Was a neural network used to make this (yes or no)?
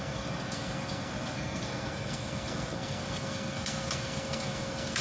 yes